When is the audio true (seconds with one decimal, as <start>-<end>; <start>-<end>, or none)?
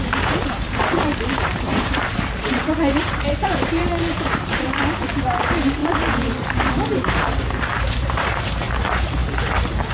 9.2-9.9